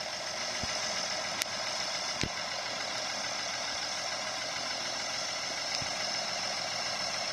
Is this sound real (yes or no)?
yes